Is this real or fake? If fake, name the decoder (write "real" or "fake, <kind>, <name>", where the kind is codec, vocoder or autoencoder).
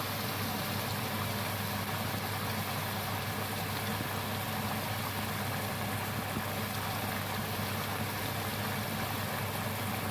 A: real